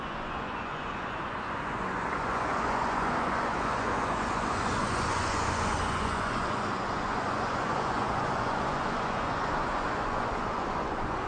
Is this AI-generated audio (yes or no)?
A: yes